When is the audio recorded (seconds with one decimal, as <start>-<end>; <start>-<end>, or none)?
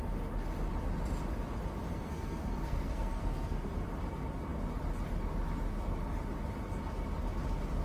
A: 0.0-1.9; 3.7-7.8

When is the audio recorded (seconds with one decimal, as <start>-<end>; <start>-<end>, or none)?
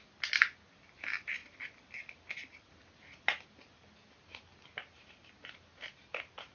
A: 0.0-4.7; 6.1-6.5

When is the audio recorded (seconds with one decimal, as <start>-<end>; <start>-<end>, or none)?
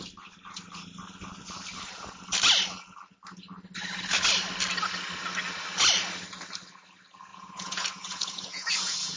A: 0.0-7.3